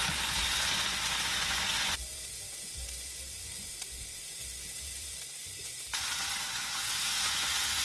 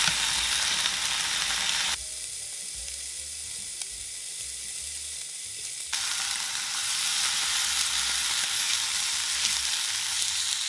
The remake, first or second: first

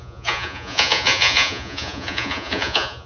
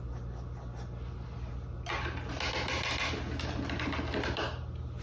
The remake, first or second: first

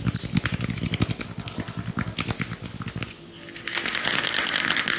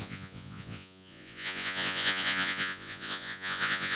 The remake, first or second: second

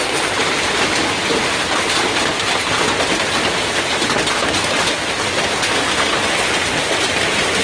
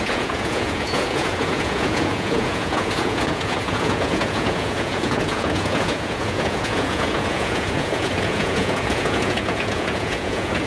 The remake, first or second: second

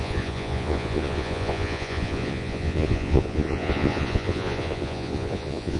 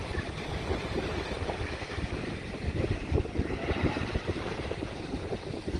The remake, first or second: first